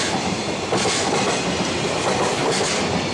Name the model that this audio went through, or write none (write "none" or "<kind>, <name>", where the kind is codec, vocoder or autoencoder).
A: none